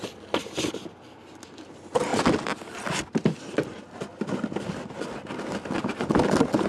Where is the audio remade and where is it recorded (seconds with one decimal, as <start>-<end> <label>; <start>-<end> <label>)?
0.0-6.7 recorded